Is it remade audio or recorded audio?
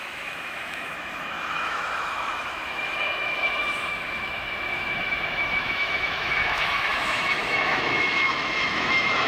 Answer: remade